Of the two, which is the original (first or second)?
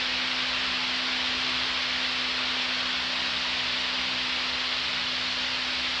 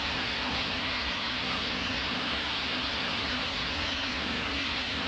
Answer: first